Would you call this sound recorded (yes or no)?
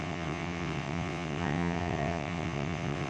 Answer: no